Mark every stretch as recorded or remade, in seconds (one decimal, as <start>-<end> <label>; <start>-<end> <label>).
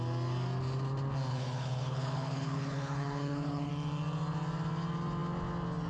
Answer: 0.0-1.3 recorded; 1.3-3.7 remade; 3.7-5.9 recorded